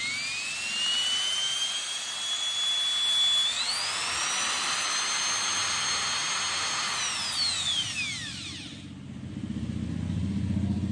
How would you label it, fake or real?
real